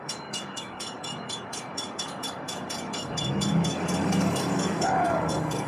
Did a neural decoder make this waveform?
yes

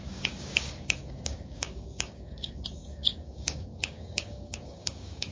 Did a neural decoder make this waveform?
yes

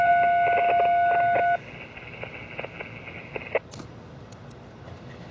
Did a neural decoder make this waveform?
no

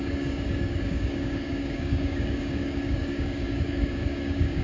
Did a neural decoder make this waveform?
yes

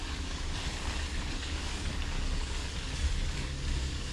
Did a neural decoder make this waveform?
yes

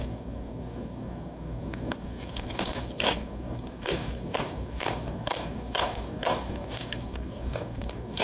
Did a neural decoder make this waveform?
yes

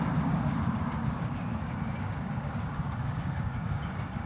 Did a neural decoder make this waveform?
yes